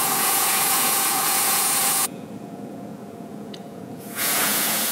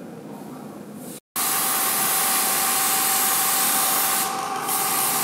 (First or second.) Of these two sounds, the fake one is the first